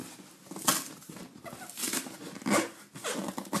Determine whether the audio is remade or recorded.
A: recorded